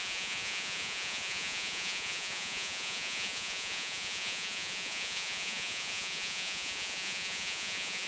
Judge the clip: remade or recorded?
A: remade